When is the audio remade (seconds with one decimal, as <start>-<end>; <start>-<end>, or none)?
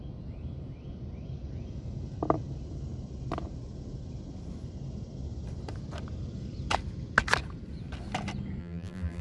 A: 8.6-9.2